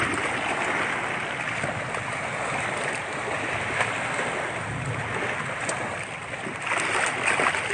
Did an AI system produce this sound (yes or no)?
no